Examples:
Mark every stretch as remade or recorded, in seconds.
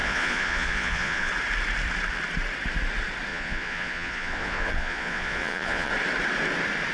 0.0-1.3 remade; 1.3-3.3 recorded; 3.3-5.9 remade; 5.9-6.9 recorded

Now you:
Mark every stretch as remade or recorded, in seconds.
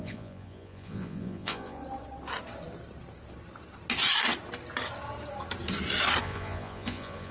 0.0-1.8 remade; 1.8-6.2 recorded; 6.2-7.3 remade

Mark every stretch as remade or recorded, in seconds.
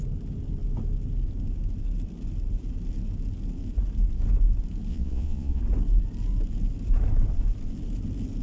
0.0-4.9 recorded; 4.9-5.6 remade; 5.6-8.4 recorded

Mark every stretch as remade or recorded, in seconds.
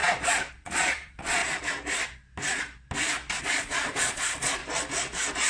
0.0-0.5 recorded; 0.5-1.4 remade; 1.4-3.4 recorded; 3.4-4.6 remade; 4.6-5.5 recorded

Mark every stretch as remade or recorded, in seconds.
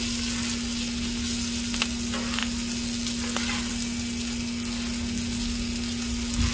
0.0-6.5 recorded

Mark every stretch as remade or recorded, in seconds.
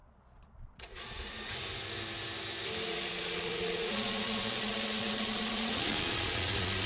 0.0-1.3 remade; 1.3-2.9 recorded; 2.9-6.9 remade